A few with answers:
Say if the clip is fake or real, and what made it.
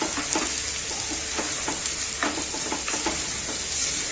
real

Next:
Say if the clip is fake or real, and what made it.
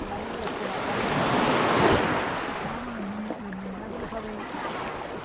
real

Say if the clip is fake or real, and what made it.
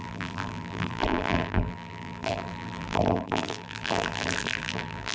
fake, vocoder, BigVGAN v2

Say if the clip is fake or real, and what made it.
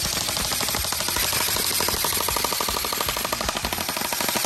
real